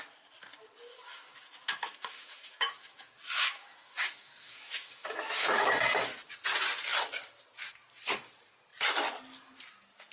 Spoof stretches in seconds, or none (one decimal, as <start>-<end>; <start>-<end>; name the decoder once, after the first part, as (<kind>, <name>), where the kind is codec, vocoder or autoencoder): 0.9-5.7 (autoencoder, DAC-VAE)